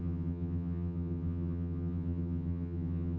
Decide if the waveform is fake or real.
fake